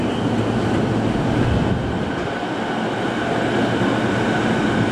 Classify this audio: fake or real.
real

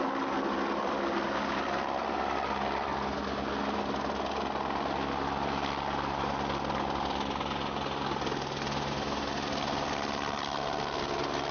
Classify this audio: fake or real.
real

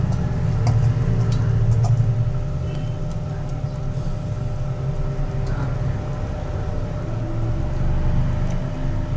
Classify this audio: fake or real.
real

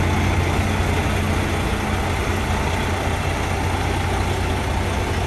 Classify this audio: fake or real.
real